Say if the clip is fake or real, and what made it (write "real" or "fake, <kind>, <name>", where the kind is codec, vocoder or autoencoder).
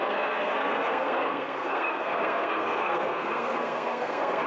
fake, codec, SNAC